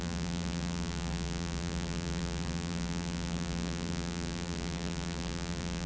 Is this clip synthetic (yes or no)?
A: yes